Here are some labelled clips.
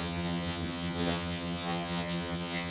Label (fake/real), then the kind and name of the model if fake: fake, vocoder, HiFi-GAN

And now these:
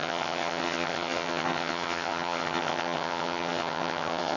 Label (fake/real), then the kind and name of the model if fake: fake, vocoder, HiFi-GAN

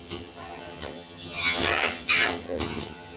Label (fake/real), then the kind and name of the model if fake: fake, vocoder, HiFi-GAN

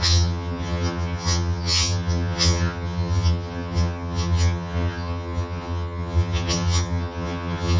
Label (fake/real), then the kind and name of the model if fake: fake, vocoder, HiFi-GAN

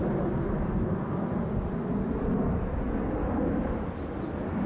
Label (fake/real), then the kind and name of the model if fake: real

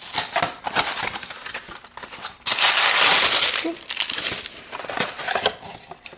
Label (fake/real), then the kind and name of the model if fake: real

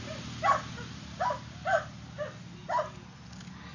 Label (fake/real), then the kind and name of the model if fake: real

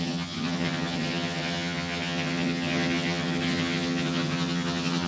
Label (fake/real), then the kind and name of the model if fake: fake, vocoder, HiFi-GAN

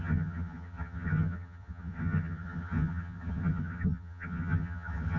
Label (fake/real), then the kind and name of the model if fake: fake, vocoder, HiFi-GAN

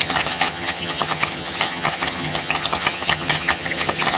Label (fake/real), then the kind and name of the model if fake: fake, vocoder, HiFi-GAN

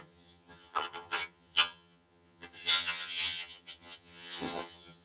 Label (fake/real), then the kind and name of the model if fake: fake, vocoder, HiFi-GAN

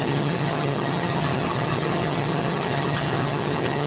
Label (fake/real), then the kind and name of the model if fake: fake, vocoder, HiFi-GAN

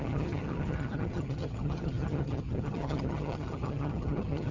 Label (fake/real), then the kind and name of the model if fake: fake, vocoder, HiFi-GAN